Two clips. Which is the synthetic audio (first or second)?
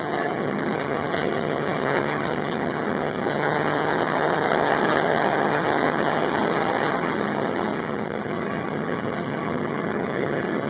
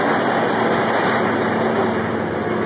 first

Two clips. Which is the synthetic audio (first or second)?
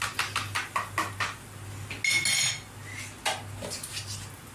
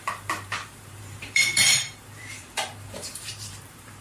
second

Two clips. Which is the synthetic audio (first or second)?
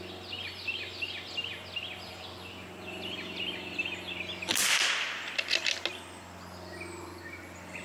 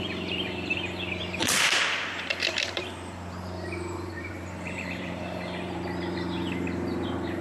second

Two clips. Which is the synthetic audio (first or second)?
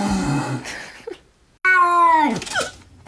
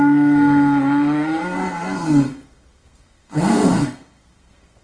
second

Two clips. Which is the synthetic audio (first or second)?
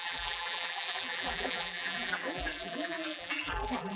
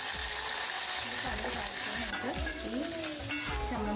first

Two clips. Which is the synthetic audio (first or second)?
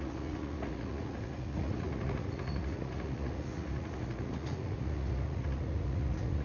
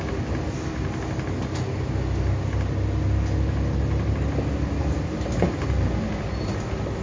first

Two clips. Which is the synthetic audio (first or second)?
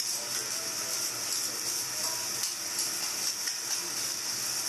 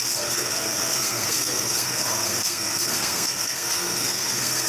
second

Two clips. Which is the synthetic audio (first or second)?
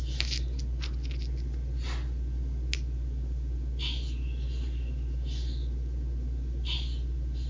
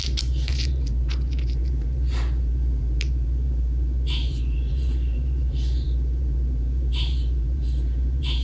second